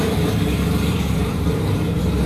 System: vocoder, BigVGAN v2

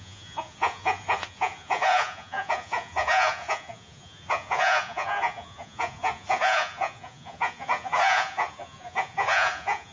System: vocoder, Vocos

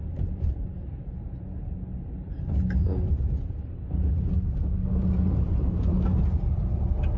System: none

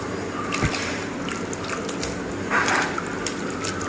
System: none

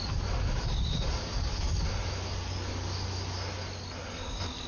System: none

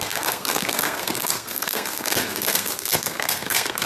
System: codec, SNAC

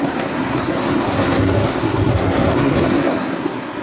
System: codec, SNAC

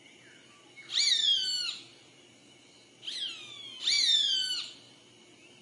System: none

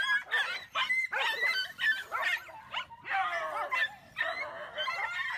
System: none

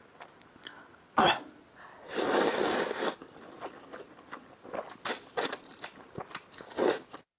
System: none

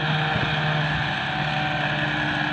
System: none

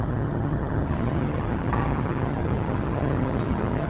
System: vocoder, HiFi-GAN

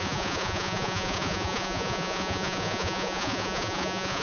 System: vocoder, Vocos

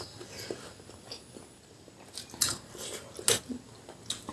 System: none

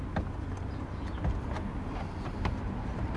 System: none